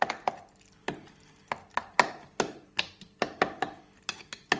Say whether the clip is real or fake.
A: real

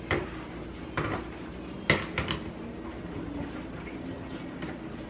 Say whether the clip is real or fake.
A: real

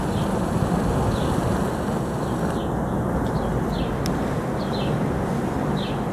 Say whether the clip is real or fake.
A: real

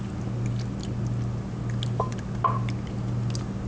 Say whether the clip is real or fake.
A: real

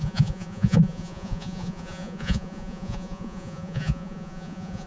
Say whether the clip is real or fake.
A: fake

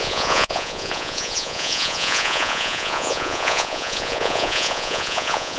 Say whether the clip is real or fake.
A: fake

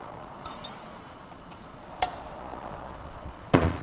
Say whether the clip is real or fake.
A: fake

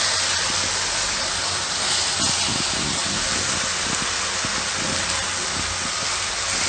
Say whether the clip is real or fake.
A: real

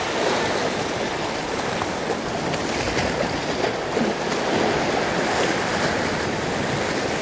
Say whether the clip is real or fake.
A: real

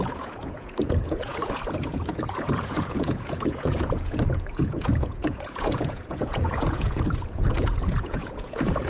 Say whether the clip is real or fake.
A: fake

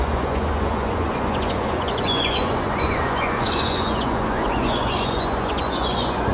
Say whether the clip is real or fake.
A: fake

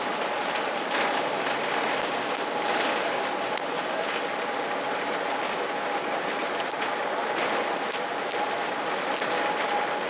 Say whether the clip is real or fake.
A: real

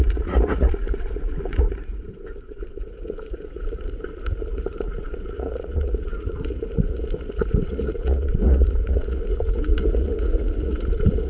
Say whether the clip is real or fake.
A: fake